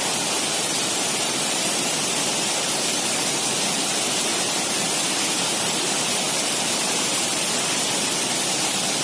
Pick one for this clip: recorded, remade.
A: recorded